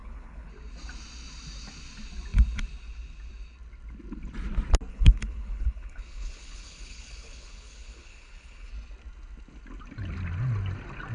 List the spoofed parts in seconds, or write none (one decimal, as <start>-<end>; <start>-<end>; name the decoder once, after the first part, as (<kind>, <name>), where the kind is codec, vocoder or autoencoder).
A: 0.0-0.5 (codec, HILCodec); 4.9-8.7